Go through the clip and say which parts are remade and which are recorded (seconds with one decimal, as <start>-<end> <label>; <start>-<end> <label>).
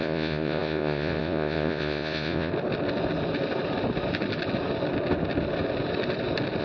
0.0-2.5 remade; 2.5-6.6 recorded